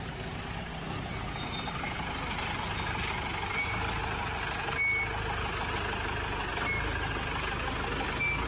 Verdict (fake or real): real